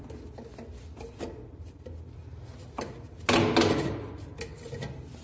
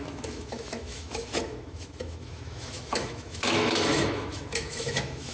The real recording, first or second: first